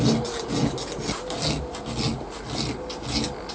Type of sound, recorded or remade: recorded